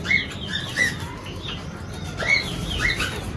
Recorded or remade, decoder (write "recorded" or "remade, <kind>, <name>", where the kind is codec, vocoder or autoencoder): recorded